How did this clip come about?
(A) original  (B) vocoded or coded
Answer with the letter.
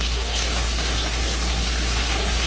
B